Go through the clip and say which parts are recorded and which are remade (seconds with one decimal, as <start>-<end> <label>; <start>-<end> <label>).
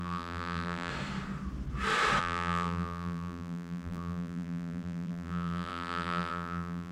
0.0-0.9 remade; 0.9-2.2 recorded; 2.2-6.9 remade